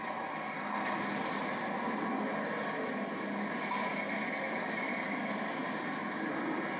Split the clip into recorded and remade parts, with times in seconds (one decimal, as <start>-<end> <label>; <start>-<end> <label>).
0.0-5.6 recorded; 5.6-6.3 remade; 6.3-6.8 recorded